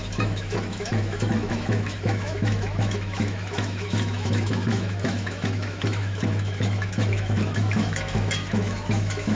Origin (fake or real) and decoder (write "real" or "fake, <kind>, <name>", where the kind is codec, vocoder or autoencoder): fake, autoencoder, DAC-VAE